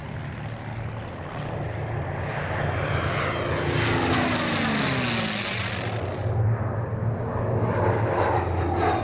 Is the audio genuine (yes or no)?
yes